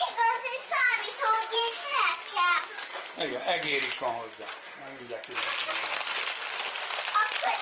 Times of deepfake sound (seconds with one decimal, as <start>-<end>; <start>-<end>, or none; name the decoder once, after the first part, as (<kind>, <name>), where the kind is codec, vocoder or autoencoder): 0.7-1.6 (vocoder, Vocos)